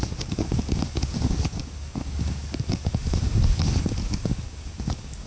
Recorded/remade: remade